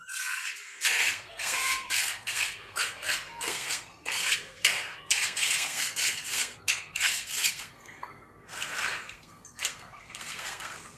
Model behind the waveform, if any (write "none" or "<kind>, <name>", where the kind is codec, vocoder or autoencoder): codec, SNAC